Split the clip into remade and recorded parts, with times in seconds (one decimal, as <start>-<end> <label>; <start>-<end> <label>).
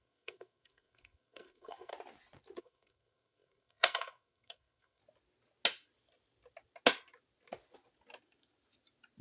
0.0-1.9 remade; 1.9-2.6 recorded; 2.6-5.0 remade; 5.0-9.2 recorded